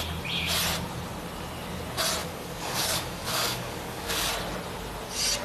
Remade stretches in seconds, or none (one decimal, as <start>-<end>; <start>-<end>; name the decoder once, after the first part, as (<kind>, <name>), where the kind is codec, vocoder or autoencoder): 2.2-4.3 (codec, DAC)